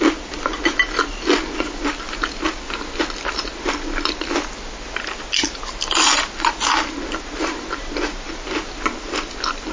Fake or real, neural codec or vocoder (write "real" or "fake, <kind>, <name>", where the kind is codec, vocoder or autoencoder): real